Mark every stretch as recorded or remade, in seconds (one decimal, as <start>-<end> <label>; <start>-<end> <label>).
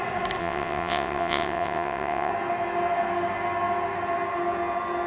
0.0-0.4 recorded; 0.4-2.3 remade; 2.3-5.1 recorded